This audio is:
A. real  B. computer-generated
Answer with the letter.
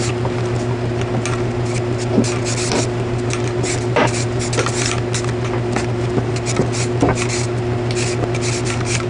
A